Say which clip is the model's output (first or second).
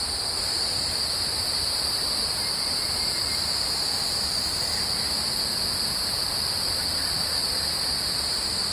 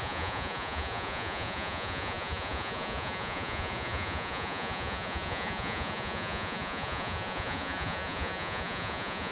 second